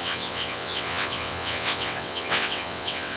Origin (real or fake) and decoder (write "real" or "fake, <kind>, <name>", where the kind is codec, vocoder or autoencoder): fake, vocoder, WaveNeXt